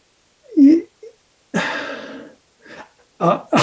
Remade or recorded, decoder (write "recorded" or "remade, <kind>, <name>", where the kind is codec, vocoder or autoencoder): recorded